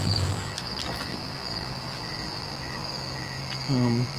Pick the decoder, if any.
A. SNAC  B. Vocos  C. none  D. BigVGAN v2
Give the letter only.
D